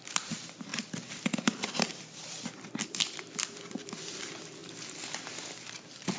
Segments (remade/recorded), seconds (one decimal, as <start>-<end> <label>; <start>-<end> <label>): 0.0-6.2 recorded